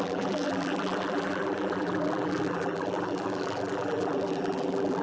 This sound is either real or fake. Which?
fake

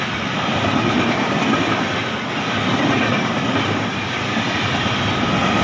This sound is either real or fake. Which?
real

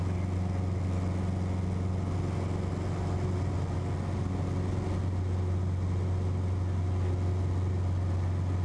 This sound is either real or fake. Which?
real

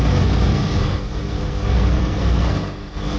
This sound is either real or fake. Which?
fake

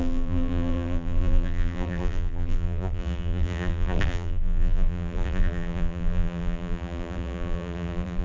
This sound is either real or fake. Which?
fake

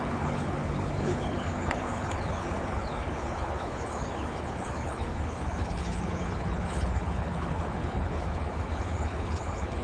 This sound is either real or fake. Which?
fake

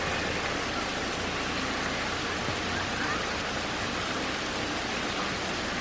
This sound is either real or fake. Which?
real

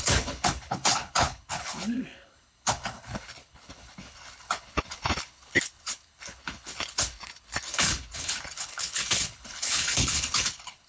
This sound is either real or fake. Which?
fake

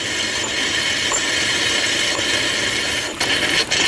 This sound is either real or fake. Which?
real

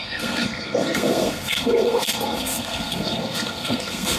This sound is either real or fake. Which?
fake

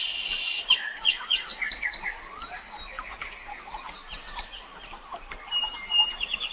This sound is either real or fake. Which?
real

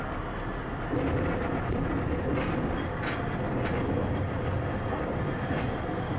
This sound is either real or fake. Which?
real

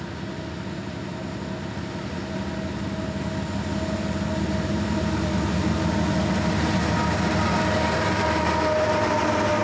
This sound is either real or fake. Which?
real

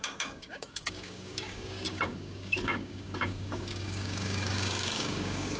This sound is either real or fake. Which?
fake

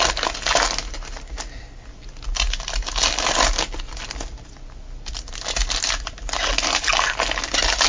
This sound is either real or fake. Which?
real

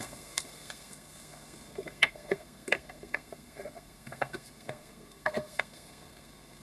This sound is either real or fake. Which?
fake